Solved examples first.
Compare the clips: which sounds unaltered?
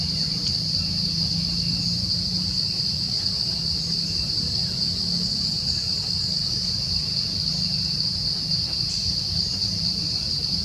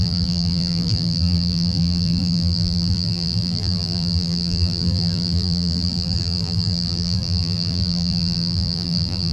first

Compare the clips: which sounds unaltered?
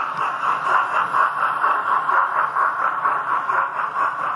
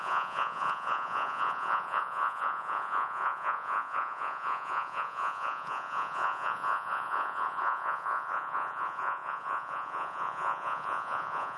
first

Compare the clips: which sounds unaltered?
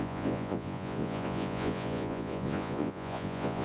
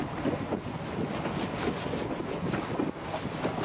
second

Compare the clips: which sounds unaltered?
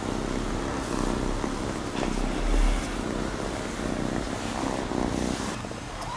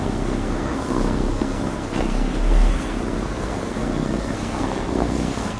first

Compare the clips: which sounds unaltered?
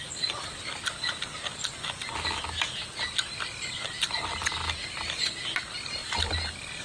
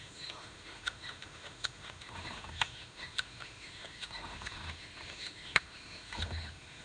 first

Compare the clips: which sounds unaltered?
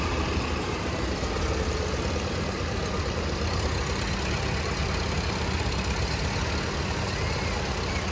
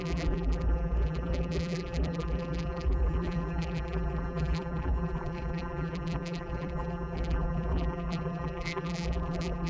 first